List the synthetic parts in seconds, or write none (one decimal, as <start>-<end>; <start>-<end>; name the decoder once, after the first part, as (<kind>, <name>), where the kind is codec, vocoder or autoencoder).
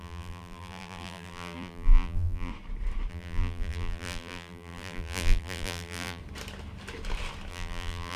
0.0-2.5 (vocoder, BigVGAN v2); 3.1-6.2; 7.5-8.2